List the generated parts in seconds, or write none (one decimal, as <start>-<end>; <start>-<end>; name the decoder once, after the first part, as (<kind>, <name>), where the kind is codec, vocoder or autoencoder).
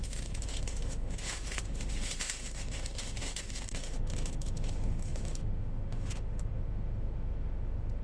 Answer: 0.0-8.0 (autoencoder, DAC-VAE)